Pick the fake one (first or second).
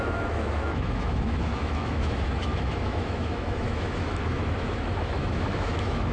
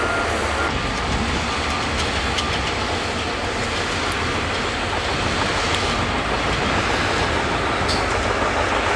first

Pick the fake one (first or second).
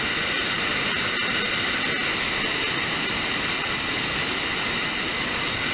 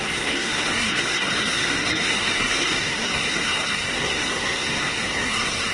second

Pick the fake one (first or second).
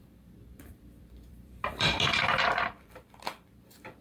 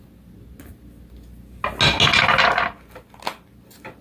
first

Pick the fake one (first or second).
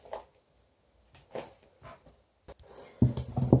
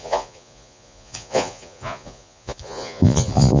second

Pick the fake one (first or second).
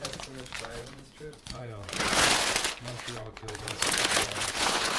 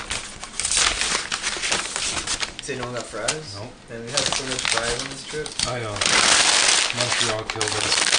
first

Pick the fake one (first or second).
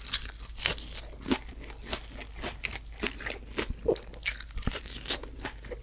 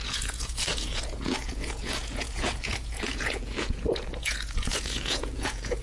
second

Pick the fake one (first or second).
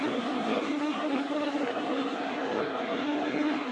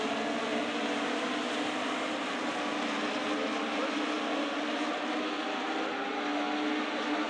first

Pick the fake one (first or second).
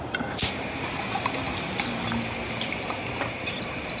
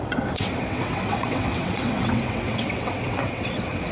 second